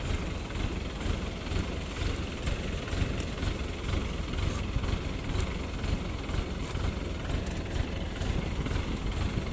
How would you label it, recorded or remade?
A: recorded